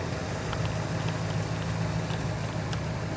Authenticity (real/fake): real